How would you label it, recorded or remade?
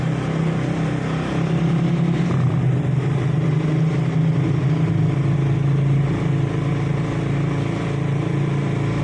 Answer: recorded